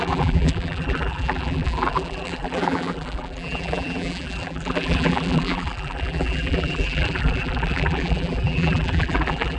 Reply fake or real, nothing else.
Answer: fake